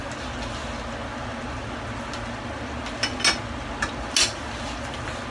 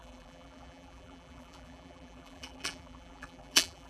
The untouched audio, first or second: first